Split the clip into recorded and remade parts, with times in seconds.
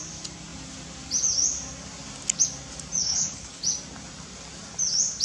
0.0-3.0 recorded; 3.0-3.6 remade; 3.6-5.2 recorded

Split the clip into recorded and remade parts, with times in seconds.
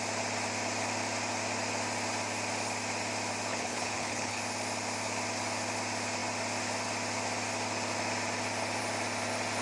0.0-3.5 recorded; 3.5-4.4 remade; 4.4-9.6 recorded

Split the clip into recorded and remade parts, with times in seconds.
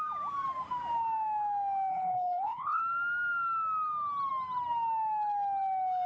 0.0-1.9 recorded; 1.9-2.8 remade; 2.8-6.1 recorded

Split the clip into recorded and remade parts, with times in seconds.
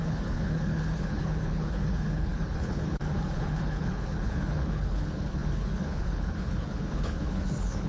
0.0-7.9 remade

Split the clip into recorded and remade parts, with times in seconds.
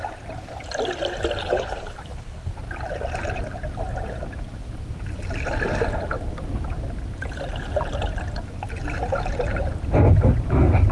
0.0-1.4 recorded; 1.4-2.5 remade; 2.5-10.9 recorded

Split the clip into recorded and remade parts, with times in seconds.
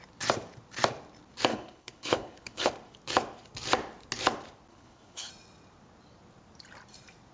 0.0-1.5 recorded; 1.5-2.7 remade; 2.7-4.7 recorded; 4.7-5.3 remade; 5.3-7.3 recorded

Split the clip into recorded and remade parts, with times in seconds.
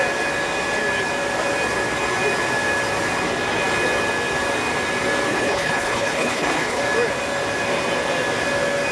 0.0-5.3 recorded; 5.3-6.8 remade; 6.8-8.9 recorded